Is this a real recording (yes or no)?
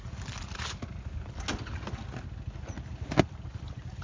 yes